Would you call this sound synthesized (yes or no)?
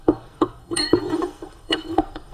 yes